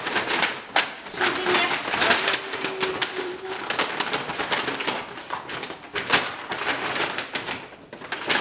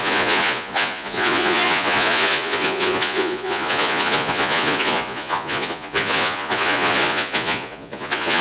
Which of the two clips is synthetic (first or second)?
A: second